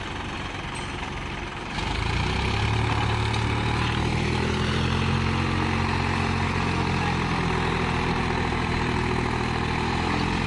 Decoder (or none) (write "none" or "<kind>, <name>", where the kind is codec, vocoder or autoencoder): none